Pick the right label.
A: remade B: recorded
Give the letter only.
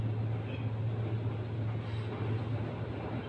B